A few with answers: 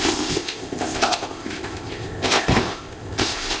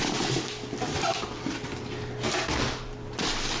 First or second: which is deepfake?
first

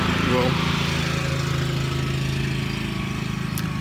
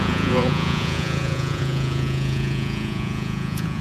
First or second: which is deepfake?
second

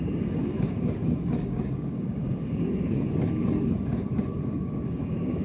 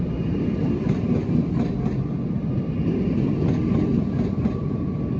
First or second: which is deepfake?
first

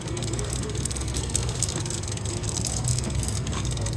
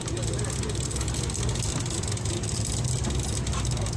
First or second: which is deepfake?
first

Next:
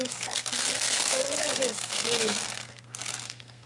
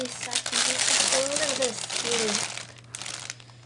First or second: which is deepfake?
first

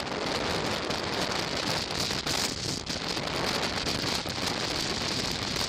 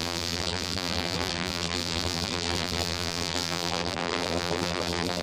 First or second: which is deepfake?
second